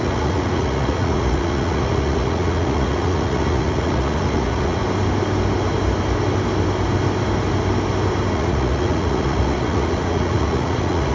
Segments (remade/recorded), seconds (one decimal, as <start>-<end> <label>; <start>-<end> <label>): 0.0-4.8 remade; 4.8-8.3 recorded; 8.3-11.1 remade